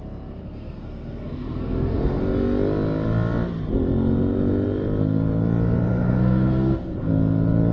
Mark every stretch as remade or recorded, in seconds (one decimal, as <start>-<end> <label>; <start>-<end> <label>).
0.0-0.4 recorded; 0.4-2.2 remade; 2.2-5.9 recorded; 5.9-7.1 remade; 7.1-7.7 recorded